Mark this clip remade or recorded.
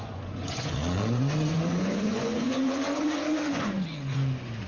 remade